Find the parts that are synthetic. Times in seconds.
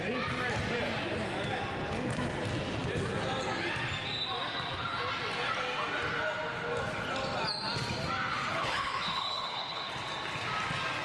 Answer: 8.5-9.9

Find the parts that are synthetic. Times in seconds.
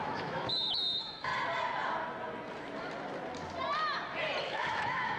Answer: 0.0-1.3; 4.4-5.2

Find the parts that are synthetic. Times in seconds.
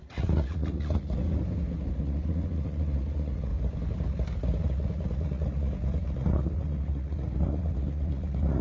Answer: 0.0-1.2; 1.9-3.5; 4.6-8.6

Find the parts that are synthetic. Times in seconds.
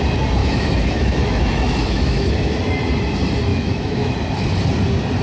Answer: 0.4-2.6; 3.5-4.1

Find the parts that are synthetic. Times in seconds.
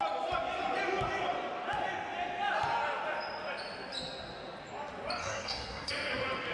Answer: 5.2-5.9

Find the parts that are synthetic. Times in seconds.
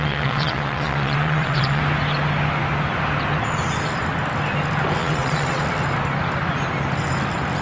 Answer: 0.0-1.8; 5.0-5.6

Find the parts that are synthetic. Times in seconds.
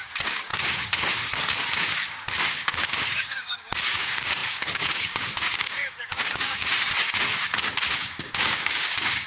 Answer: 0.0-0.5; 2.5-6.7; 7.9-9.3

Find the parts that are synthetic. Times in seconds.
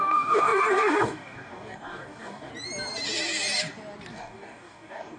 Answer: 0.0-2.5; 4.1-5.2